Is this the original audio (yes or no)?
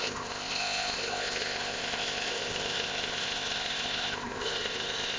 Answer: no